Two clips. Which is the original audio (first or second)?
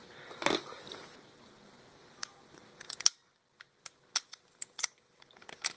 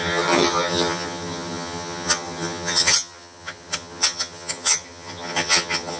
first